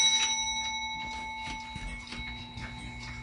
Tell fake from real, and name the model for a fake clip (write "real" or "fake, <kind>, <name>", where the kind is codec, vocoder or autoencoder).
real